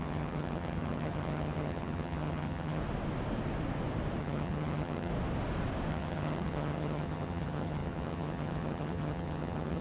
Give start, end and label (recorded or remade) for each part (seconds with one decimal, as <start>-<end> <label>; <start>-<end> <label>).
0.0-2.8 remade; 2.8-4.2 recorded; 4.2-5.1 remade; 5.1-5.9 recorded; 5.9-9.8 remade